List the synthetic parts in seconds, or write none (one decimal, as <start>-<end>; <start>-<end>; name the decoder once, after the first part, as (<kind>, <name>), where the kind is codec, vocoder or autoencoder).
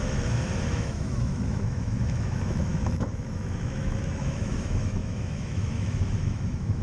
0.0-6.8 (autoencoder, DAC-VAE)